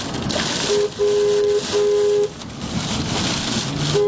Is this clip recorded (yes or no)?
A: yes